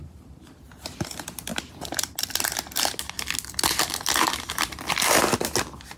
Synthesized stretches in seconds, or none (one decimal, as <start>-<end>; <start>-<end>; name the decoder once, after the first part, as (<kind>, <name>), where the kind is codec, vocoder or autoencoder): none